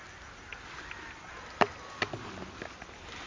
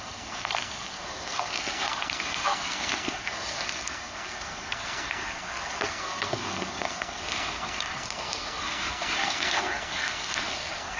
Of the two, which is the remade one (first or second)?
second